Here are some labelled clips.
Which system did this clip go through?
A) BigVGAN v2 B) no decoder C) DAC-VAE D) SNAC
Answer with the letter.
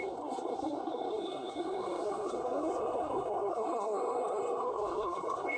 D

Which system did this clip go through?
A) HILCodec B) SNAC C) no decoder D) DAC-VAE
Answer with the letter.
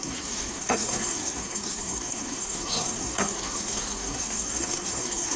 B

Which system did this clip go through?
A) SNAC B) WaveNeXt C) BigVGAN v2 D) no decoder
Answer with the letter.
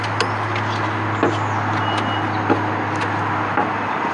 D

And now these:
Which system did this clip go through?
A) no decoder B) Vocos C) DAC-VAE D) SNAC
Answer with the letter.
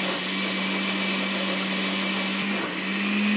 A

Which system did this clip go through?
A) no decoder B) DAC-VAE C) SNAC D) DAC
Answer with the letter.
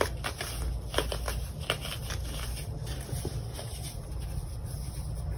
A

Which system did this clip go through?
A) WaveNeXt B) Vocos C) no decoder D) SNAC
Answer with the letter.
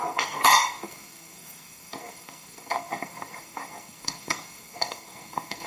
D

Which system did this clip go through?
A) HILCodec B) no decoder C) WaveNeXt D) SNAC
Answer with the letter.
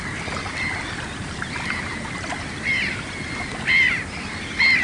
B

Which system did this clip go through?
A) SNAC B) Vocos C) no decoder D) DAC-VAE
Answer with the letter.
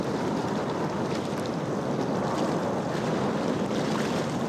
C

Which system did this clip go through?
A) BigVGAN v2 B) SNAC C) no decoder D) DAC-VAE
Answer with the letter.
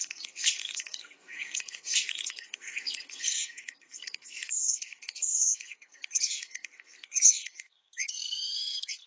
B